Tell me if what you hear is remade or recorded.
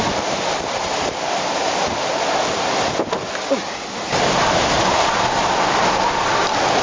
recorded